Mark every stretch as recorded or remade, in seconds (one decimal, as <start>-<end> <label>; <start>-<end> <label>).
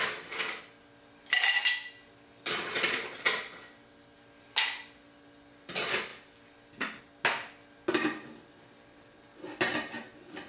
0.0-10.5 recorded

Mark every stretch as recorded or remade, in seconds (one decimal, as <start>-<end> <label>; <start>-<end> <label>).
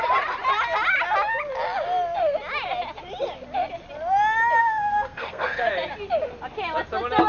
0.0-4.6 recorded; 4.6-5.7 remade; 5.7-7.3 recorded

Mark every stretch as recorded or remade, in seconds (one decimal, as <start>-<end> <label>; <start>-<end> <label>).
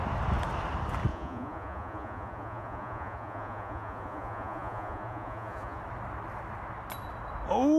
0.0-1.1 recorded; 1.1-5.8 remade; 5.8-7.8 recorded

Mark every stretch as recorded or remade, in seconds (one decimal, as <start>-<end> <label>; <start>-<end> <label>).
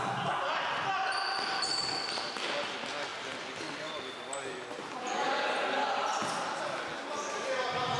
0.0-8.0 recorded